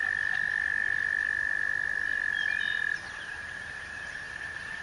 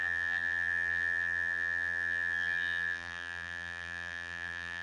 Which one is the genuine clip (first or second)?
first